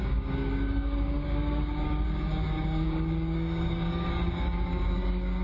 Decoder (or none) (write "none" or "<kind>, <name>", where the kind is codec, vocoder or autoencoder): codec, DAC